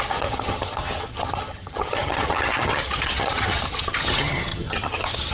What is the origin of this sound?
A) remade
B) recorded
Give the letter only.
A